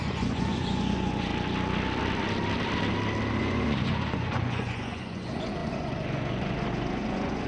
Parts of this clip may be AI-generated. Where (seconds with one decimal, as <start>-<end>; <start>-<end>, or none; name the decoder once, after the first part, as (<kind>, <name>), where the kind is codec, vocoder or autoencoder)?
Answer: 0.0-1.3 (vocoder, Vocos); 3.4-7.5